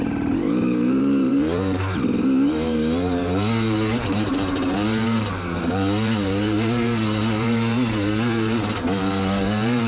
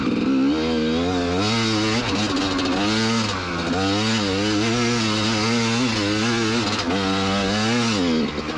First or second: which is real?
second